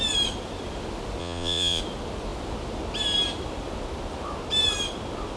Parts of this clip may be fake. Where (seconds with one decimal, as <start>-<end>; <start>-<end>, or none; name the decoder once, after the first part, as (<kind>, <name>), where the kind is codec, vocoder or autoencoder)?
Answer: 1.2-1.8 (vocoder, Vocos)